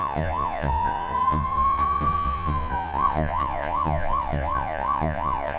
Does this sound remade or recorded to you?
remade